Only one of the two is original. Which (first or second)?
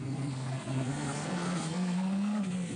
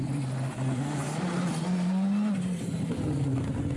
second